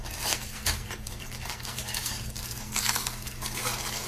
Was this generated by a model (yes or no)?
yes